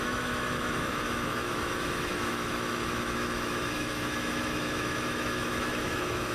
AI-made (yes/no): yes